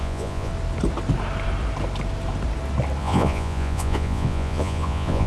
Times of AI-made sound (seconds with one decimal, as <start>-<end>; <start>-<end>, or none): 0.0-0.5; 3.0-5.3